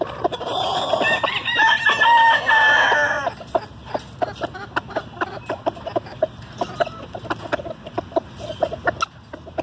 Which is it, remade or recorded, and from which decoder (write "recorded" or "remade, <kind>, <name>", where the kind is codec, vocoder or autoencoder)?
recorded